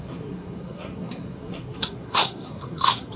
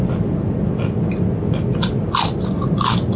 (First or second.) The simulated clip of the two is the first